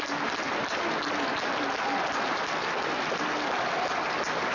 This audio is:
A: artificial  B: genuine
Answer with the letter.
B